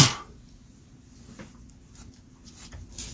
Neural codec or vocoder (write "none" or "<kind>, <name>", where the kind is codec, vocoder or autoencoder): none